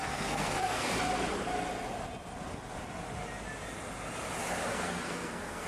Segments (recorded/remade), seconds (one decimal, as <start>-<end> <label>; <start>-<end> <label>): 0.0-0.9 remade; 0.9-4.7 recorded; 4.7-5.7 remade